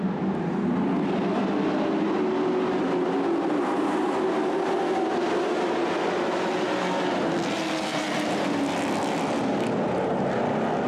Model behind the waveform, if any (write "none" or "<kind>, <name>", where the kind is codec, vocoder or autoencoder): none